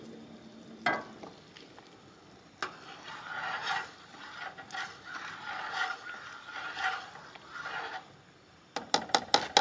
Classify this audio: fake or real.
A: real